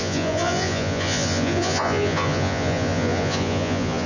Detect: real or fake fake